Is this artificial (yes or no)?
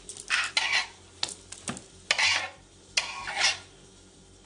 no